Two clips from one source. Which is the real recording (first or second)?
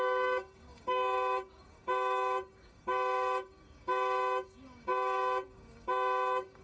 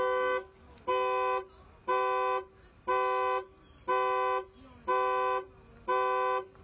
second